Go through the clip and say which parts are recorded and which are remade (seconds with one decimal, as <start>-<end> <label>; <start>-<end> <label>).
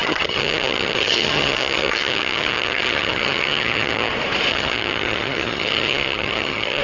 0.0-4.1 remade; 4.1-4.5 recorded; 4.5-6.8 remade